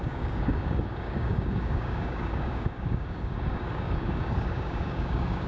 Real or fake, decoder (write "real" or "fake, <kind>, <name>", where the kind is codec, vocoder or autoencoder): fake, codec, DAC